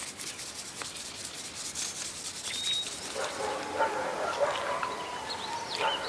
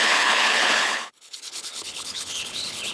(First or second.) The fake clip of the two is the second